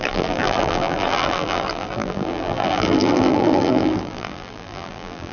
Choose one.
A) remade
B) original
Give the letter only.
A